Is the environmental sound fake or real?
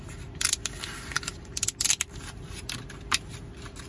real